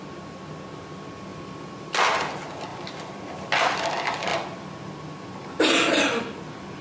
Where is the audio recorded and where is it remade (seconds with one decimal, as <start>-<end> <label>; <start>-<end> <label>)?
0.0-2.7 recorded; 2.7-3.3 remade; 3.3-6.8 recorded